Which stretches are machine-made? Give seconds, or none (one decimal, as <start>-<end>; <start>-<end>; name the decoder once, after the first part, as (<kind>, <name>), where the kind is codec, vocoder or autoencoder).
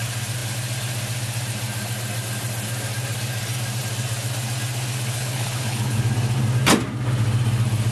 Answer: 5.1-6.0 (codec, HILCodec)